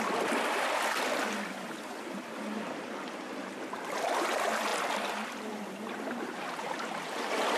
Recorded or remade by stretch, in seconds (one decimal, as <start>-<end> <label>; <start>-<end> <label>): 0.0-7.6 recorded